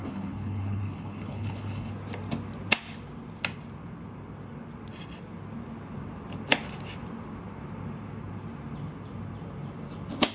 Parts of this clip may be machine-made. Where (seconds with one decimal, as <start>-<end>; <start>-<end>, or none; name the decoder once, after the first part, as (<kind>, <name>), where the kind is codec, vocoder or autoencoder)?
0.0-1.9 (codec, HILCodec)